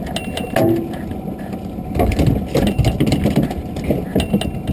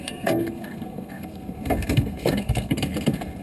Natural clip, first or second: first